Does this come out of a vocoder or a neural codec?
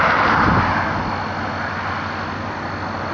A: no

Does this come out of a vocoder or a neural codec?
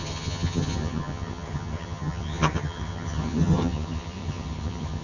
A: yes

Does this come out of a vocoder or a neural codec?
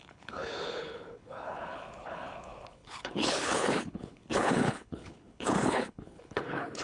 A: yes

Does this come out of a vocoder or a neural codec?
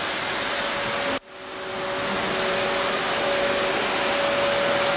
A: no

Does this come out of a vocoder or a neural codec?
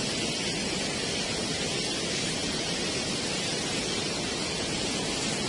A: no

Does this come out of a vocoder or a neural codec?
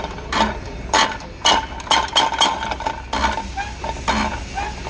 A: no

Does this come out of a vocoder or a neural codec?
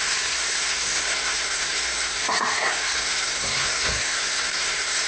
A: yes